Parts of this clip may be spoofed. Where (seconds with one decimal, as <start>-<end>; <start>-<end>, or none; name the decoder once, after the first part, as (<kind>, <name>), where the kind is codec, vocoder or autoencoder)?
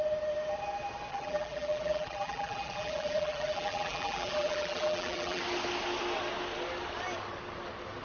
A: 1.1-5.4 (vocoder, BigVGAN v2)